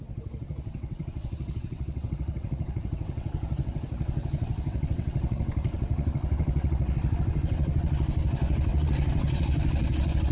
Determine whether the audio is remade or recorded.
remade